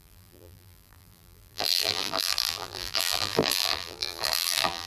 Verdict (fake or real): fake